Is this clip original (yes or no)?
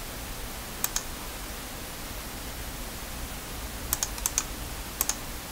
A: yes